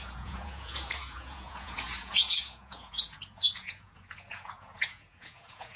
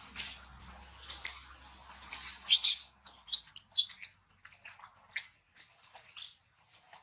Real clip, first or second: second